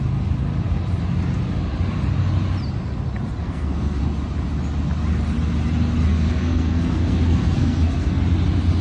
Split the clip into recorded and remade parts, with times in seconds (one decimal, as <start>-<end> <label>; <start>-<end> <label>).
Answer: 0.0-3.4 recorded; 3.4-4.0 remade; 4.0-6.1 recorded; 6.1-8.2 remade; 8.2-8.8 recorded